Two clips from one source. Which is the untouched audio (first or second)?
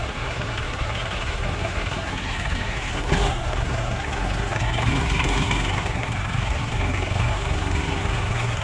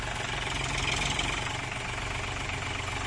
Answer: second